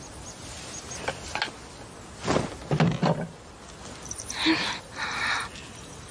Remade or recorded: recorded